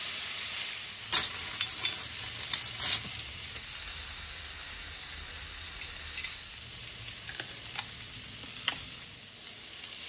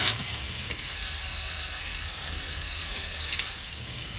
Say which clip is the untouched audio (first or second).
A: first